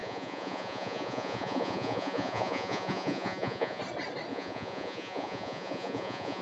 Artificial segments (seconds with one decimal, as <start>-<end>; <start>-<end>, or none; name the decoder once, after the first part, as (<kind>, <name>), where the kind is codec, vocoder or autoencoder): 0.0-3.8 (vocoder, Vocos); 4.3-6.4